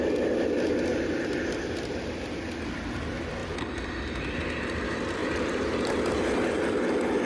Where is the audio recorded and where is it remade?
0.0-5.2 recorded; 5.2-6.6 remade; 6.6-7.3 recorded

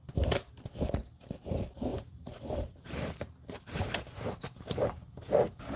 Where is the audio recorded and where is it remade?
0.0-1.9 recorded; 1.9-5.1 remade; 5.1-5.8 recorded

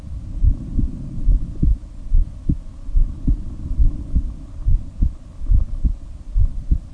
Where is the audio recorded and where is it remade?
0.0-1.7 remade; 1.7-3.1 recorded; 3.1-6.9 remade

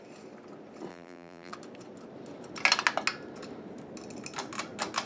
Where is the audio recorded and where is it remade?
0.0-0.9 recorded; 0.9-1.5 remade; 1.5-5.1 recorded